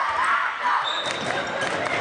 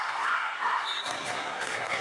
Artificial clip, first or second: second